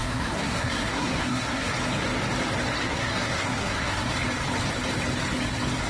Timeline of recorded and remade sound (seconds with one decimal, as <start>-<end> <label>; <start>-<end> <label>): 0.0-1.7 remade; 1.7-2.8 recorded; 2.8-4.1 remade; 4.1-5.9 recorded